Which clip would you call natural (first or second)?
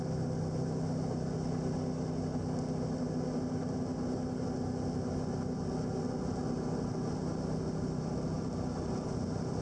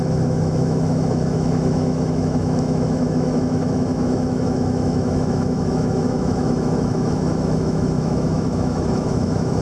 first